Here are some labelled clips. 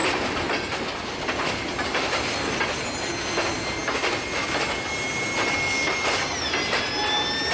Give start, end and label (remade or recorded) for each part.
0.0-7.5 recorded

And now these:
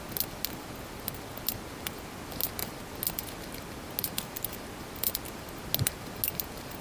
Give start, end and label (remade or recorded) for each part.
0.0-6.8 recorded

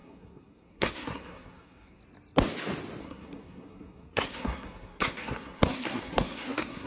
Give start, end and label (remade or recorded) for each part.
0.0-2.0 remade; 2.0-3.0 recorded; 3.0-6.9 remade

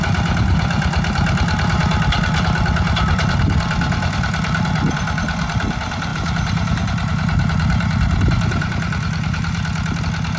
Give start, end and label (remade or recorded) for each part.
0.0-6.1 recorded; 6.1-10.0 remade; 10.0-10.4 recorded

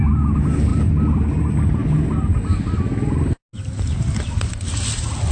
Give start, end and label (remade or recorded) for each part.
0.0-5.3 recorded